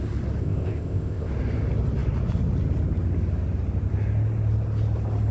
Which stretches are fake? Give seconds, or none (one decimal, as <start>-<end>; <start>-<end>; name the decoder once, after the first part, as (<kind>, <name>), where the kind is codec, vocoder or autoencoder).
0.4-1.3 (codec, ZipCodec)